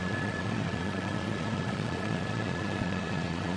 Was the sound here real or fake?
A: fake